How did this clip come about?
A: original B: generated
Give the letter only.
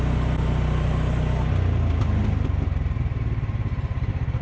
A